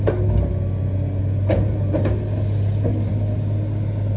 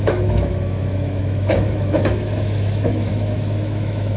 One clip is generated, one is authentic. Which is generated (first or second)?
second